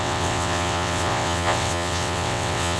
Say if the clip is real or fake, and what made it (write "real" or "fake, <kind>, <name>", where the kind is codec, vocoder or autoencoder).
fake, vocoder, WaveNeXt